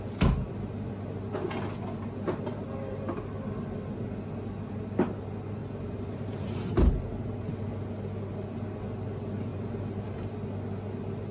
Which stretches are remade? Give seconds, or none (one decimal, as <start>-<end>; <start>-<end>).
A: 2.5-3.2; 5.6-7.5; 9.5-10.3